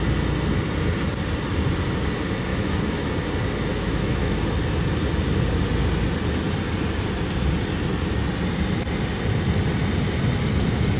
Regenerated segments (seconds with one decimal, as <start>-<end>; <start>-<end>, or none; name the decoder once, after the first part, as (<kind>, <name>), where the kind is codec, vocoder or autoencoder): 2.5-3.1 (autoencoder, DAC-VAE); 3.7-4.3